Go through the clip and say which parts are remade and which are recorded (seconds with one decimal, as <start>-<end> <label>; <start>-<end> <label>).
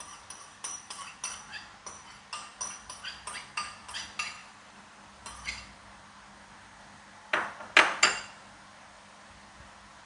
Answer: 0.0-0.5 recorded; 0.5-1.1 remade; 1.1-4.4 recorded; 4.4-5.2 remade; 5.2-10.1 recorded